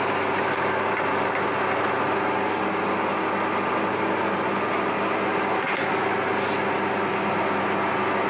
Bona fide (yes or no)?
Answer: yes